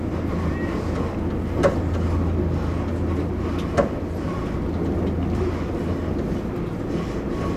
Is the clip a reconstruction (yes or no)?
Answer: no